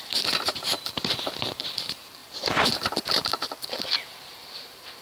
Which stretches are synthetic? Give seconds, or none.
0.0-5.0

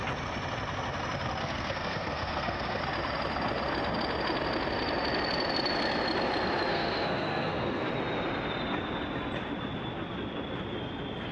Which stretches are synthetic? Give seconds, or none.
1.4-2.8; 6.7-7.9

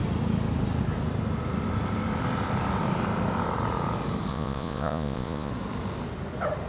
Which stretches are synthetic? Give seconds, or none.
4.3-5.5